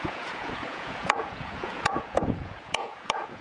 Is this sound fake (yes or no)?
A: yes